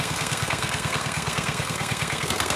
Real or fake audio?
fake